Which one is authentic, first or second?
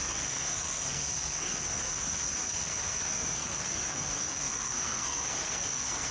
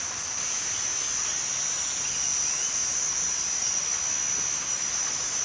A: second